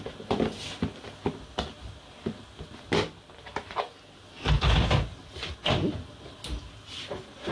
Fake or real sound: real